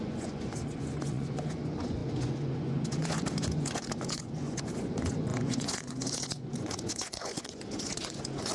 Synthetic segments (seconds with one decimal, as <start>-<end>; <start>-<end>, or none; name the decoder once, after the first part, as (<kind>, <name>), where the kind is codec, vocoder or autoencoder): 0.0-8.5 (vocoder, Vocos)